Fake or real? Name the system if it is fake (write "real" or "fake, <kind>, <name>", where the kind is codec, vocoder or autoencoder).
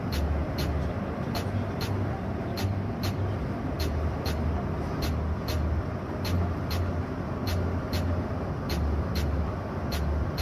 real